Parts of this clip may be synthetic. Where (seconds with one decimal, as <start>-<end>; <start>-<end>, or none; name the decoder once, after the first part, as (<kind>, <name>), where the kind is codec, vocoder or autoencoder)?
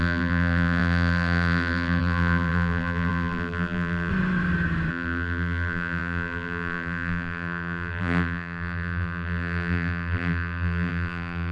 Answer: 0.0-4.1 (vocoder, BigVGAN v2); 4.9-11.5